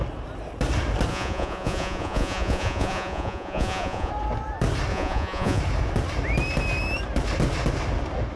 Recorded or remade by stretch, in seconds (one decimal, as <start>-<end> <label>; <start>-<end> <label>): 0.0-1.1 recorded; 1.1-4.1 remade; 4.1-4.9 recorded; 4.9-5.6 remade; 5.6-8.4 recorded